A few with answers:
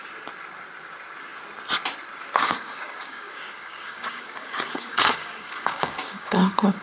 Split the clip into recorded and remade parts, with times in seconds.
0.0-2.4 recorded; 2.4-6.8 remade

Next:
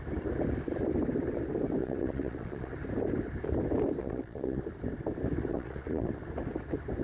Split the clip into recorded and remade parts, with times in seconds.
0.0-1.8 recorded; 1.8-2.7 remade; 2.7-4.0 recorded; 4.0-4.6 remade; 4.6-5.5 recorded; 5.5-6.1 remade; 6.1-7.0 recorded

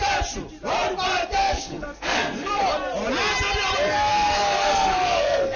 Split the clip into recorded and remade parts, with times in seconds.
0.0-1.4 recorded; 1.4-2.6 remade; 2.6-4.1 recorded; 4.1-5.6 remade

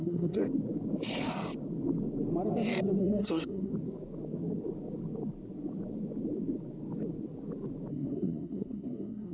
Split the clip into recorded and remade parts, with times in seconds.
0.0-0.4 remade; 0.4-3.0 recorded; 3.0-3.7 remade; 3.7-7.9 recorded; 7.9-9.3 remade

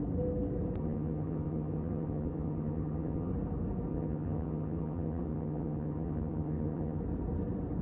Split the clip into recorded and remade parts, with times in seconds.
0.0-0.8 recorded; 0.8-3.3 remade; 3.3-3.9 recorded; 3.9-7.0 remade; 7.0-7.8 recorded

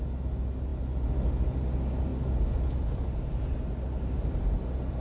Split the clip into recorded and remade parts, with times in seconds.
0.0-5.0 recorded

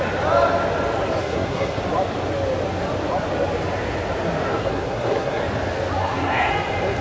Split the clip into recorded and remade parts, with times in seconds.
0.0-1.2 recorded; 1.2-1.8 remade; 1.8-4.6 recorded; 4.6-5.4 remade; 5.4-6.0 recorded; 6.0-6.5 remade; 6.5-7.0 recorded